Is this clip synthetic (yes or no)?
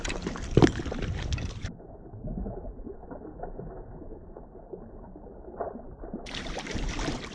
no